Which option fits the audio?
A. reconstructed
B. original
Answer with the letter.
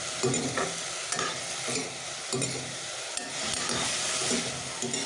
B